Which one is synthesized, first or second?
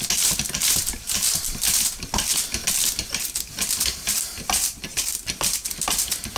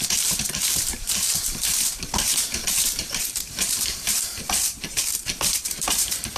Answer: second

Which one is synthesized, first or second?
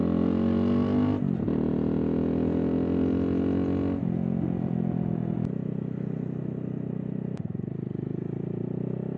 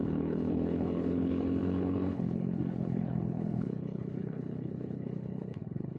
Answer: second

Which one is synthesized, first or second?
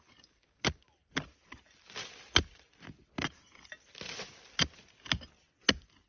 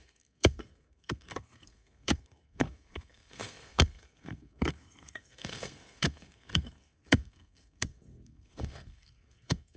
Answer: second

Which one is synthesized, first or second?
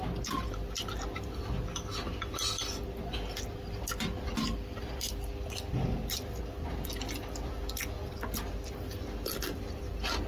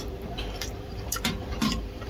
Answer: second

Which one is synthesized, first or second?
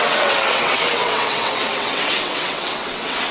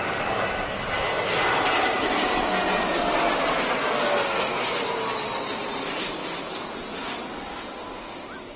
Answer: first